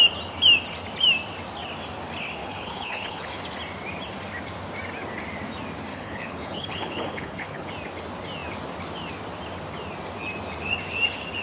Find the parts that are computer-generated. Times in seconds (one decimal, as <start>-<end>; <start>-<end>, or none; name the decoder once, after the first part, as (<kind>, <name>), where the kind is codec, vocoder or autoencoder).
2.4-3.4 (codec, HILCodec); 5.9-7.7